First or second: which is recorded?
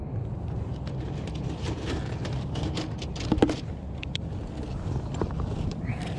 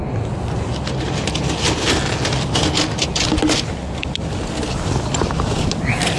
second